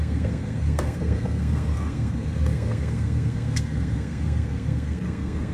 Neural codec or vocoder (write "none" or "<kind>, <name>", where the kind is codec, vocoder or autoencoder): codec, SNAC